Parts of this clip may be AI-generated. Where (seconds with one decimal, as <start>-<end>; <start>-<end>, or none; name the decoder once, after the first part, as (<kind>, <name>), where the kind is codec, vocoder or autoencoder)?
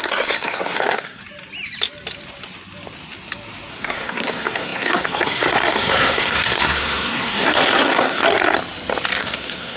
0.0-1.2 (codec, SNAC); 3.7-8.2; 9.2-9.8